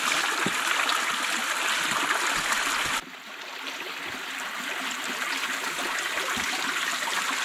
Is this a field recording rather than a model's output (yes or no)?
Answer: yes